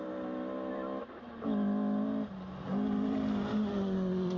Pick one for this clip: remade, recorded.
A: recorded